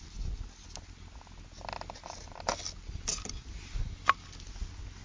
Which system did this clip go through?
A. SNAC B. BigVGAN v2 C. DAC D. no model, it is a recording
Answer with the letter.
D